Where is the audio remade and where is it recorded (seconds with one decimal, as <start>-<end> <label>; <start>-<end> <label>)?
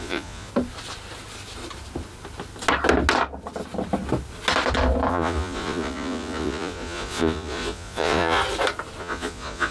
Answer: 0.0-0.5 remade; 0.5-5.1 recorded; 5.1-8.4 remade; 8.4-9.0 recorded; 9.0-9.7 remade